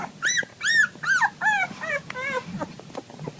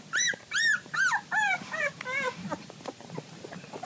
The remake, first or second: second